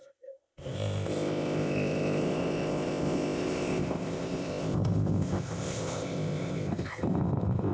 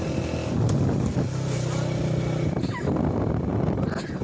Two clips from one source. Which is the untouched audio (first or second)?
second